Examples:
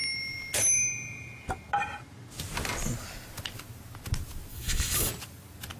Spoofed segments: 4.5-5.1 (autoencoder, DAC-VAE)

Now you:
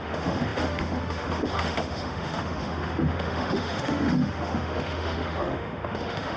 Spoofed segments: 0.0-6.4 (autoencoder, DAC-VAE)

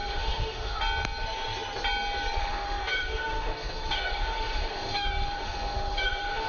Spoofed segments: 0.0-0.8 (autoencoder, DAC-VAE); 2.4-6.5

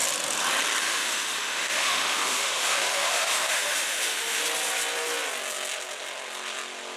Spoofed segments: 0.8-4.4 (autoencoder, DAC-VAE)

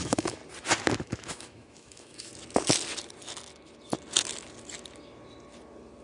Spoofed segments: 0.0-0.4 (autoencoder, DAC-VAE); 1.0-2.3

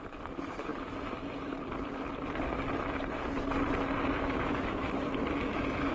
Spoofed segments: 0.0-0.7 (autoencoder, DAC-VAE); 4.2-5.9

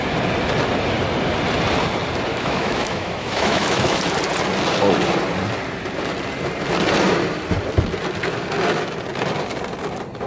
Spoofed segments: 2.3-4.0 (autoencoder, DAC-VAE)